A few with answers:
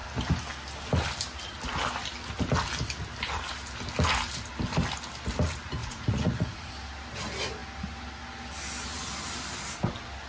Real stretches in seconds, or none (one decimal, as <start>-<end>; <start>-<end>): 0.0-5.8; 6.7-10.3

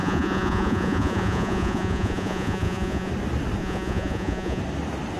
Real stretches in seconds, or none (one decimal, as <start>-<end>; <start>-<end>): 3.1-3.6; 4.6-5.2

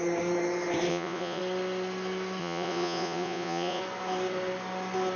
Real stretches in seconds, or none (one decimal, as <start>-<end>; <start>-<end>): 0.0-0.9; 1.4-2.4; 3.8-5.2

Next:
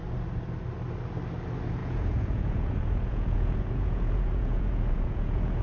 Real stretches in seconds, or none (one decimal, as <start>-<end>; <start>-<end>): 0.0-1.8

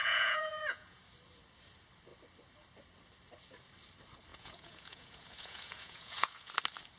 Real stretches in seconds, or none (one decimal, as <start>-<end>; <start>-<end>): 1.0-4.3; 6.5-7.0

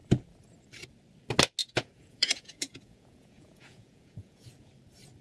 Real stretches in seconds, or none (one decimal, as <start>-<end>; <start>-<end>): 0.0-1.6; 4.7-5.2